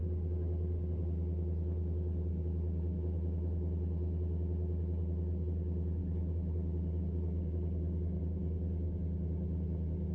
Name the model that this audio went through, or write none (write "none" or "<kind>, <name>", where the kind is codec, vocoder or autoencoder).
none